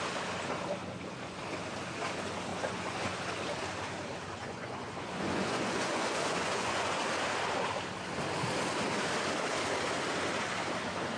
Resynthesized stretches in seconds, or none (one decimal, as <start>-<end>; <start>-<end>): 0.8-1.4; 2.5-3.2; 4.4-7.0